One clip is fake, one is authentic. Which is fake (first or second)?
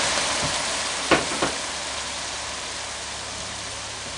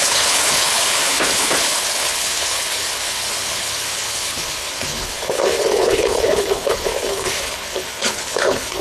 second